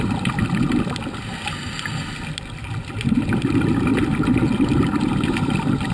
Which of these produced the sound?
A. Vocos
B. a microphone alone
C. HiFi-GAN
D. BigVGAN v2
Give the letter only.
B